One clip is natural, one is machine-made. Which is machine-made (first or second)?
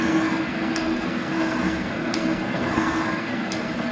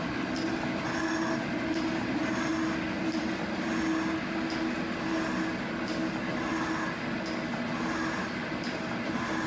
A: first